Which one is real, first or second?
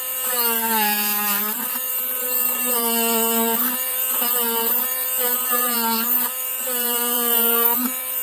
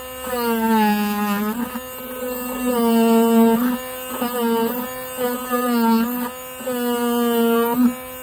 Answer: second